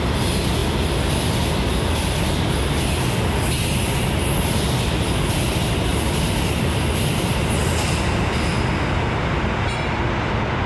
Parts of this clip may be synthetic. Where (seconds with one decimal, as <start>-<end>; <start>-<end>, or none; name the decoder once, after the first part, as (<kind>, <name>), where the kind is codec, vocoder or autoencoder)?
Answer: 5.9-6.5 (vocoder, BigVGAN v2)